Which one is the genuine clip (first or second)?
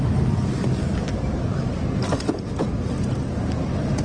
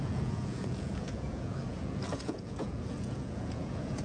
first